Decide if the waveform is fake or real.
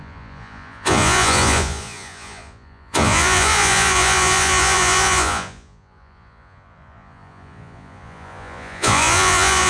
fake